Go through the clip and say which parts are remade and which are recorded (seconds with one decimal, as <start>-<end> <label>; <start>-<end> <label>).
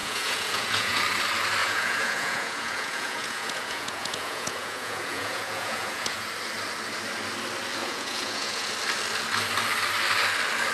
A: 0.0-1.0 remade; 1.0-1.6 recorded; 1.6-6.3 remade; 6.3-7.8 recorded; 7.8-8.7 remade; 8.7-10.7 recorded